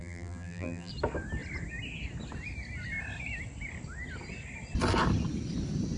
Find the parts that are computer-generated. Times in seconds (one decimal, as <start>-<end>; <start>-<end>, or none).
0.0-0.9